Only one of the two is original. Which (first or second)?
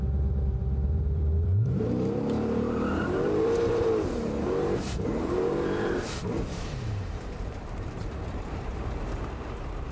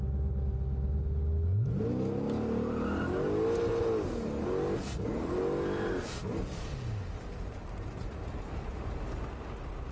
second